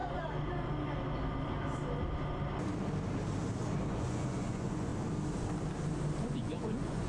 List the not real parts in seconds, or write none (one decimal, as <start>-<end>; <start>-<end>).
3.9-4.9; 6.2-7.1